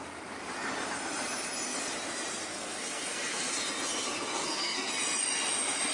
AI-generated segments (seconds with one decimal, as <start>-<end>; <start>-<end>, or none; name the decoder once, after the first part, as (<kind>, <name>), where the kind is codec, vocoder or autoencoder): 2.5-3.5 (codec, SNAC); 4.4-4.9